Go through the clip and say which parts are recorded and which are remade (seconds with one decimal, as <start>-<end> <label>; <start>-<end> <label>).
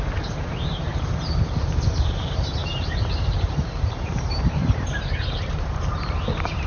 0.0-0.9 remade; 0.9-2.2 recorded; 2.2-6.7 remade